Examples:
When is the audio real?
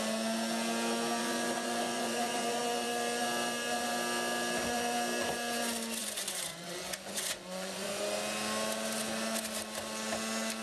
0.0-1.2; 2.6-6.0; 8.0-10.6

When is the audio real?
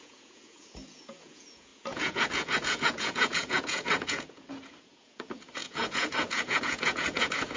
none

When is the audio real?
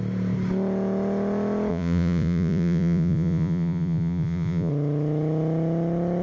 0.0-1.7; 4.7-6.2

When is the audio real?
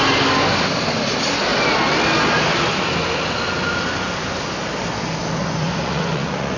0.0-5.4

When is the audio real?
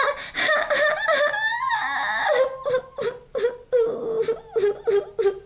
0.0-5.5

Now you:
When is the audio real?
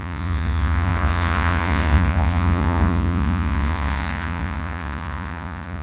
none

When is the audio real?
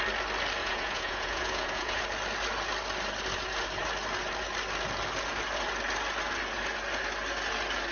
0.0-0.6; 2.0-7.9